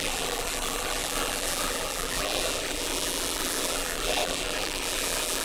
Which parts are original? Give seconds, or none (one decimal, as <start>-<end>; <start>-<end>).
none